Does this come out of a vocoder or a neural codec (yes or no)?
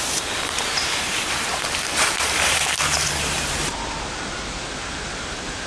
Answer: yes